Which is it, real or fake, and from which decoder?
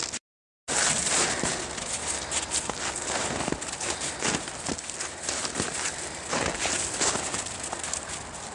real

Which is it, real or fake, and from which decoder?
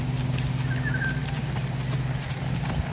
real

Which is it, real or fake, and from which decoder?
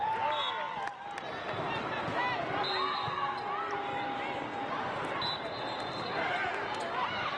real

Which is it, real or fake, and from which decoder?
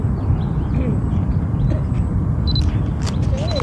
real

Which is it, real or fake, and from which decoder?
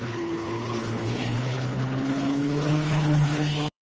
fake, codec, HILCodec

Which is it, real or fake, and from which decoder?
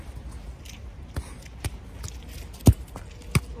real